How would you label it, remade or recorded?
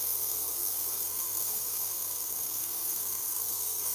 remade